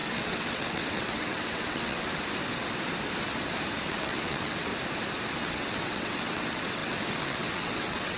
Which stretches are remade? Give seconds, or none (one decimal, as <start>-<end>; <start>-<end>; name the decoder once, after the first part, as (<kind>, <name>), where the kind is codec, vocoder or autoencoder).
0.0-2.2 (vocoder, WaveNeXt); 3.9-4.7; 5.4-8.2